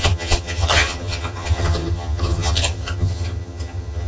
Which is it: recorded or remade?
remade